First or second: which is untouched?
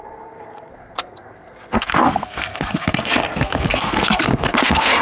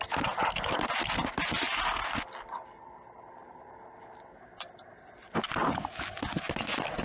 second